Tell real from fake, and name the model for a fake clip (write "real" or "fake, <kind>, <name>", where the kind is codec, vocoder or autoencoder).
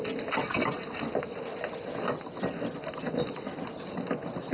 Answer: real